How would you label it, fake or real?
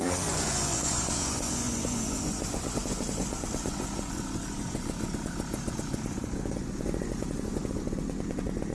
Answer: fake